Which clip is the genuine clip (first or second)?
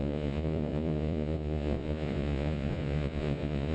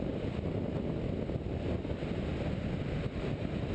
second